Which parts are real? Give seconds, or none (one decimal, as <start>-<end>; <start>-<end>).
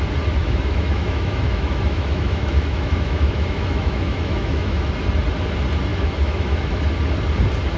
0.0-0.4; 4.8-5.9; 6.8-7.8